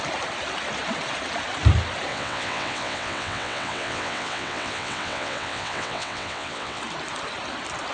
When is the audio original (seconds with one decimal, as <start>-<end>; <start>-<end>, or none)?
0.0-2.1; 6.8-7.9

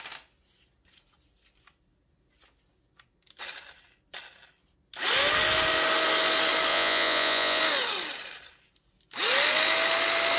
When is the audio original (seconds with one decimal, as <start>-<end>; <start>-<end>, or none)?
0.0-6.7; 7.6-10.4

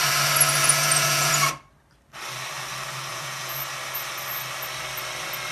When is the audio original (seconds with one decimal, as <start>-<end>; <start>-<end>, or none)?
0.0-0.6; 1.3-3.1; 3.6-5.5

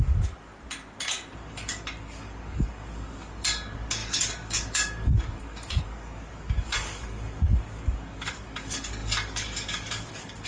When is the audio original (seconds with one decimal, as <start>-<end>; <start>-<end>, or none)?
0.5-1.4

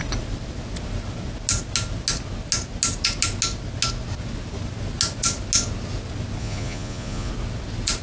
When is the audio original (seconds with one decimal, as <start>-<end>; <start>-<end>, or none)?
0.0-6.4; 7.3-8.0

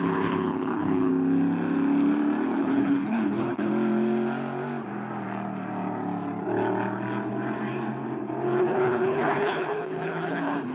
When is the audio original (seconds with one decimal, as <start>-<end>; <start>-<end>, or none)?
1.1-2.6; 3.7-8.6

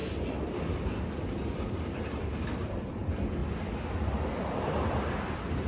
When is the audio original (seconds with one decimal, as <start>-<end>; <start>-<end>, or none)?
0.0-1.5; 3.4-5.7

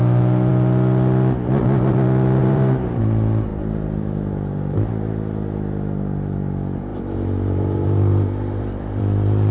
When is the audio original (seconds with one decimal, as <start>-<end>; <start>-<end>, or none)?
0.0-2.4; 3.0-3.5; 4.9-6.9; 9.0-9.5